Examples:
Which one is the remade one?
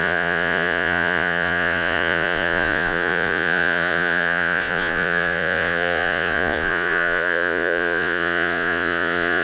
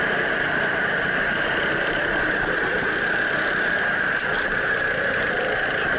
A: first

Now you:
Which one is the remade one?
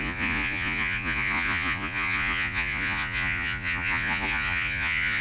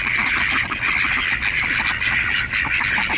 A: first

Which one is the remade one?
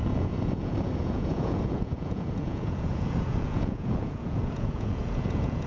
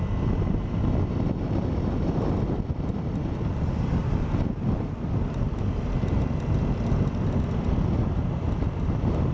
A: first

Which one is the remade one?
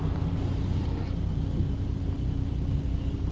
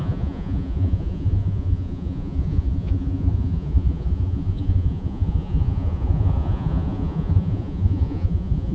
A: second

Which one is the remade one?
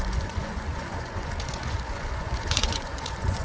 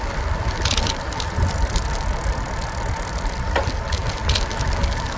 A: first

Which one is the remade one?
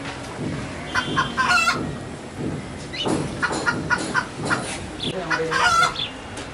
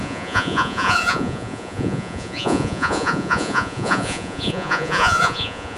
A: second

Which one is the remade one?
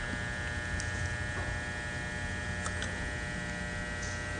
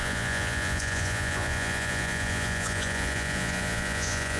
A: second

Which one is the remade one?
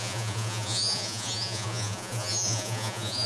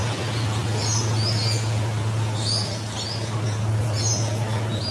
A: first